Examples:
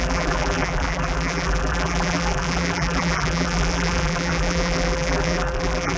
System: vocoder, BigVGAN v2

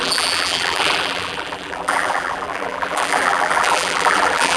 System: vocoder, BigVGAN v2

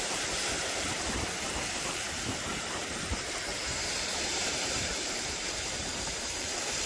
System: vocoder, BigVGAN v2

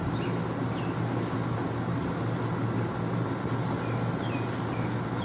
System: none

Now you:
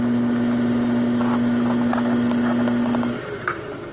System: none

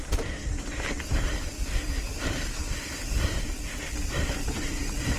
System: vocoder, BigVGAN v2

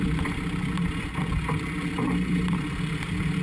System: vocoder, BigVGAN v2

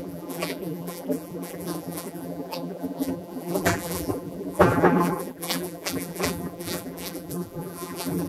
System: vocoder, BigVGAN v2